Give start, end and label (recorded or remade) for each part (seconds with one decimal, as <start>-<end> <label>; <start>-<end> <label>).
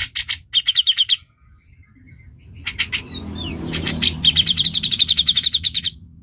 0.0-0.7 recorded; 0.7-1.2 remade; 1.2-4.9 recorded; 4.9-6.2 remade